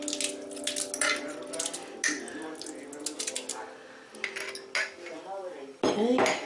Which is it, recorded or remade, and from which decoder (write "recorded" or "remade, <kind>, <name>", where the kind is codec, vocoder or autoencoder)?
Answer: recorded